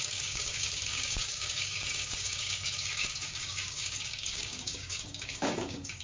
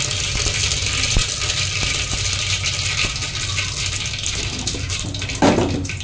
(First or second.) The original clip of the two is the second